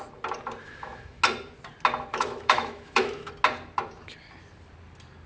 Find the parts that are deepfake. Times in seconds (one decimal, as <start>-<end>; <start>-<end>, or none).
0.6-1.2; 2.1-3.3